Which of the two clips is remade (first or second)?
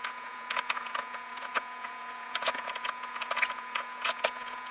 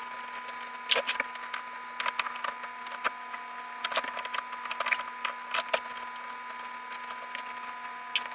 first